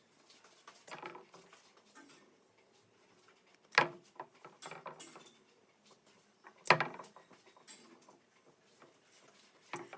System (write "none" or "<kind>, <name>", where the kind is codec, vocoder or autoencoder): none